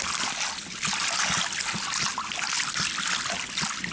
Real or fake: real